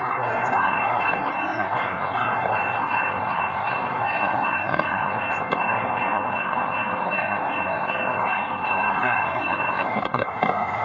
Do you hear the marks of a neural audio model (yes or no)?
yes